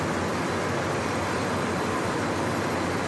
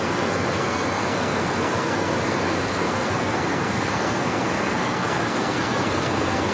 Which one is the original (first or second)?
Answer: first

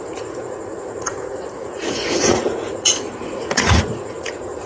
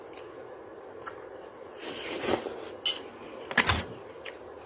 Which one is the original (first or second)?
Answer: second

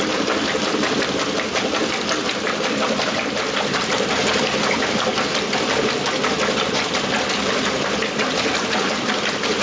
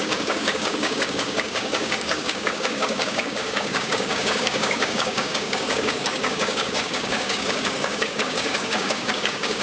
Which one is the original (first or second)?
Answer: first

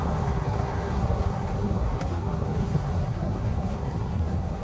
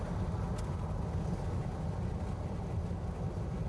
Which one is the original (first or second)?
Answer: second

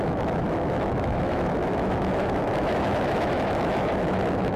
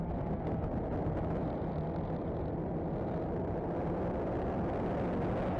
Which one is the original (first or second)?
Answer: second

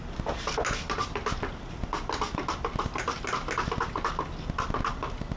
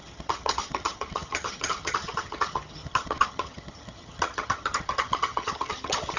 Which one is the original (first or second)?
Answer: first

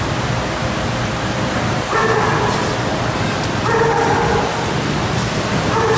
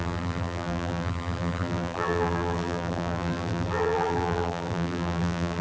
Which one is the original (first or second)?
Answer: first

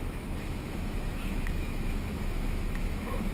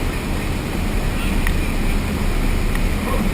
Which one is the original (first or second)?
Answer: second